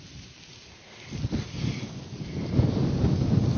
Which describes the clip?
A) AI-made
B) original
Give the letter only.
B